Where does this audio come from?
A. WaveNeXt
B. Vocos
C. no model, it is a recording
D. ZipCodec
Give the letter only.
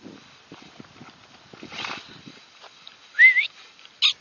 C